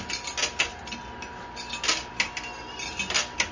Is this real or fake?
real